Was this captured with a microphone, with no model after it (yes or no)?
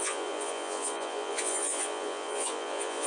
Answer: no